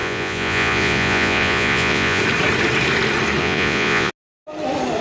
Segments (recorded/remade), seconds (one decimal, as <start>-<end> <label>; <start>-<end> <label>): 0.0-2.2 remade; 2.2-3.4 recorded; 3.4-4.1 remade; 4.1-5.0 recorded